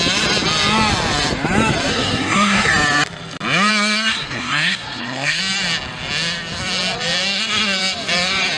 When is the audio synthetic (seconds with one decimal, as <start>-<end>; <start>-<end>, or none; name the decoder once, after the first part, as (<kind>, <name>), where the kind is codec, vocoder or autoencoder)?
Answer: 1.9-2.7 (codec, SNAC); 3.7-5.4